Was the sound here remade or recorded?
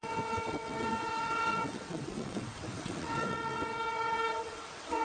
remade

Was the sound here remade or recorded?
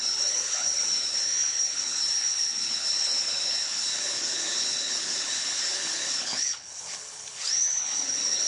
remade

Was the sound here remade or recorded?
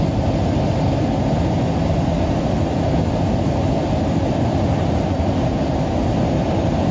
recorded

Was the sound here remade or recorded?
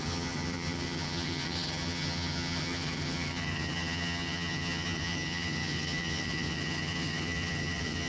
remade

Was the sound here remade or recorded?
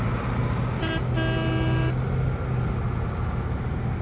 recorded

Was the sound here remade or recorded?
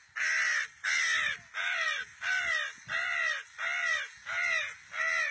recorded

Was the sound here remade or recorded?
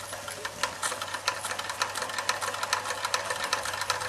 recorded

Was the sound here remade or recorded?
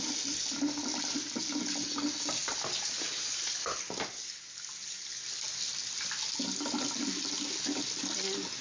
recorded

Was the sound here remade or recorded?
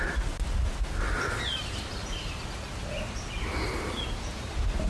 recorded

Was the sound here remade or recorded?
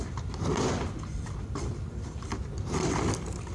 recorded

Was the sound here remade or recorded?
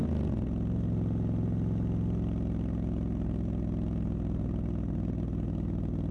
recorded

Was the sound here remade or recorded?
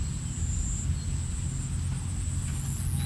recorded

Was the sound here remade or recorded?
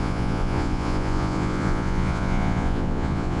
remade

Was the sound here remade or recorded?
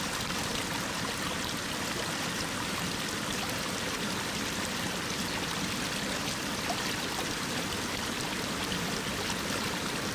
recorded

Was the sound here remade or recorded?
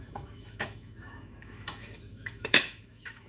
remade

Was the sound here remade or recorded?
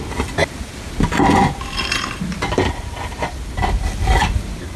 recorded